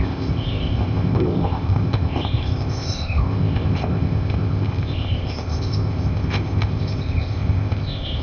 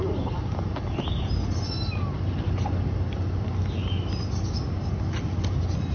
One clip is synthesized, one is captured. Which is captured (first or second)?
second